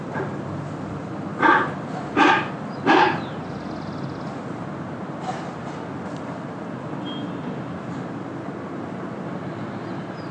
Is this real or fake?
real